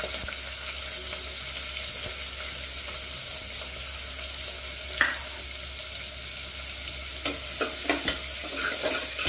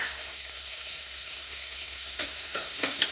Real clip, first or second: first